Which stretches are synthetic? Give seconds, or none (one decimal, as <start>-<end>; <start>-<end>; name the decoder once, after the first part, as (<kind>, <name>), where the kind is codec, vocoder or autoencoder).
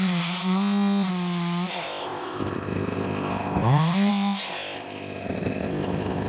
0.0-1.1 (codec, ZipCodec); 1.7-6.3